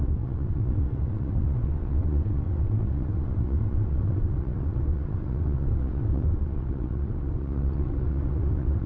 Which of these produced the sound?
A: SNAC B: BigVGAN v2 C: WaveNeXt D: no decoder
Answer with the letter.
C